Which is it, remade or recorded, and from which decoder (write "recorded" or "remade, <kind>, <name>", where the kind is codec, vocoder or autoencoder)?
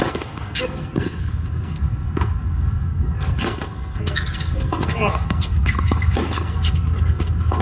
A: remade, codec, SNAC